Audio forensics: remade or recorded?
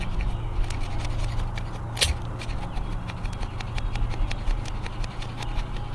recorded